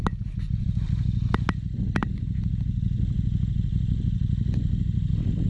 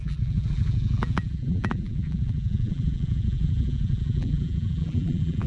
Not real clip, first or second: second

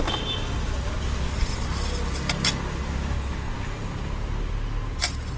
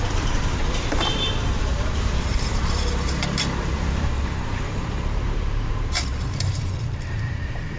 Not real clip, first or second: second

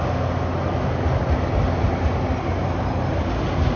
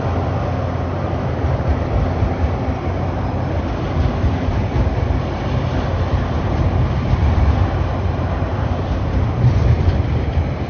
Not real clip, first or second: second